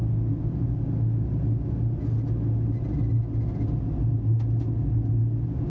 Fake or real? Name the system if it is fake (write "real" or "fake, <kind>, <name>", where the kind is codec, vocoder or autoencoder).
real